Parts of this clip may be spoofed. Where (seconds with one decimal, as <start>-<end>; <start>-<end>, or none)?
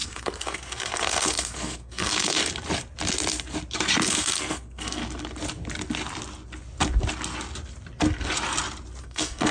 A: 0.0-2.4; 4.0-5.0; 9.0-9.5